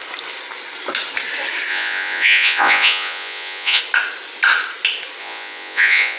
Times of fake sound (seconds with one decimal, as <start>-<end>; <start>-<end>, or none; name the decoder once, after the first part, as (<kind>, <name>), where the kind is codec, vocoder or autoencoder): 1.7-3.8 (vocoder, Vocos); 5.2-6.2